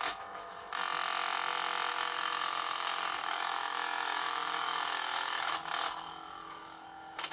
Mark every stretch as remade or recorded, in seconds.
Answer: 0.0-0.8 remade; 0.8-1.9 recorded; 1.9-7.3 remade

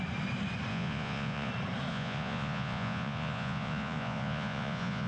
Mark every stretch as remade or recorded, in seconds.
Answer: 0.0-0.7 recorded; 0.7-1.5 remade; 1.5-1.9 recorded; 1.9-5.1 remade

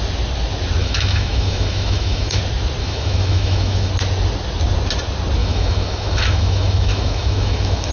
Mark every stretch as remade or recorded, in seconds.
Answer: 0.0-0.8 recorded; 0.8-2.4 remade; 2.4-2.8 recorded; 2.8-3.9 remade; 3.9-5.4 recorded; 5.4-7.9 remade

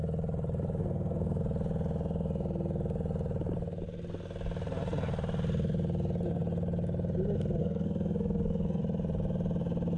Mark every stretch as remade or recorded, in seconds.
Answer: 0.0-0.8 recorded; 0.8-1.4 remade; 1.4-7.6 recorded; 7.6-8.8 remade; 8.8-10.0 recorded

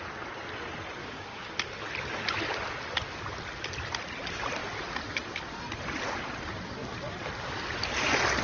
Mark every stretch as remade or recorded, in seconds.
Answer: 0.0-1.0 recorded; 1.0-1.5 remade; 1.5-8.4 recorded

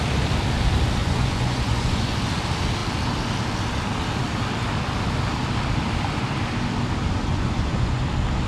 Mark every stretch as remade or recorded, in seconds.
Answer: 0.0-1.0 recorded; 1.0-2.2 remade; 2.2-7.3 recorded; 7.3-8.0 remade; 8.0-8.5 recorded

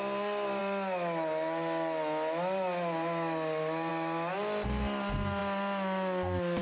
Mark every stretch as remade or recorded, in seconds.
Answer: 0.0-6.6 recorded

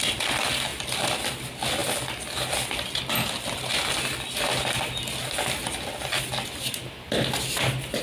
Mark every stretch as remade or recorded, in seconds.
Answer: 0.0-8.0 recorded